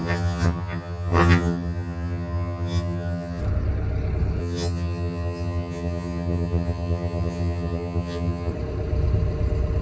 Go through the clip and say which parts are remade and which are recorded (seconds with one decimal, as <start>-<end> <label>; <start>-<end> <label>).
0.0-3.4 remade; 3.4-4.4 recorded; 4.4-8.5 remade; 8.5-9.8 recorded